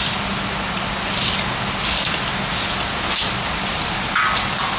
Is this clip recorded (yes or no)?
yes